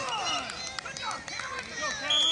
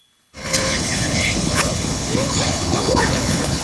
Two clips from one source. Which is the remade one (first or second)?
second